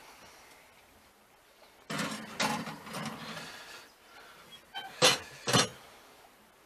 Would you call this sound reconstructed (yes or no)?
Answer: no